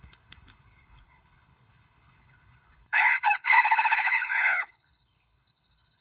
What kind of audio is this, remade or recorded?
remade